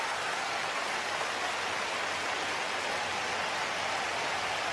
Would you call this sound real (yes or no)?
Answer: yes